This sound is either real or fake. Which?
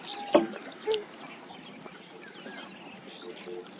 real